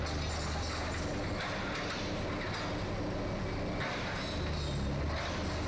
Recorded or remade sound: recorded